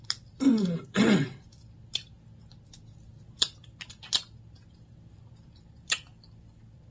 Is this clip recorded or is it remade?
remade